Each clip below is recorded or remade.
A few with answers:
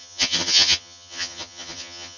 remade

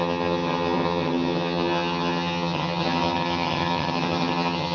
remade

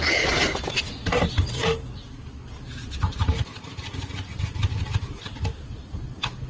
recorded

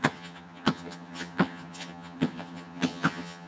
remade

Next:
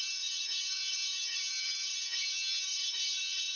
remade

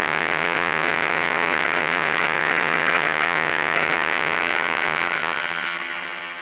remade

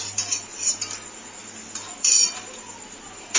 recorded